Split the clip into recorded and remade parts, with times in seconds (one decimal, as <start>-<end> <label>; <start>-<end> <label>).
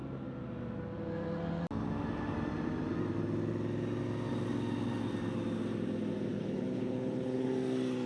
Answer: 0.0-6.3 recorded; 6.3-7.5 remade; 7.5-8.1 recorded